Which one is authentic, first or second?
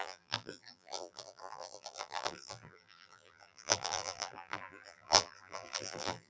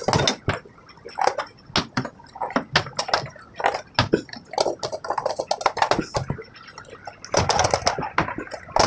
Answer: second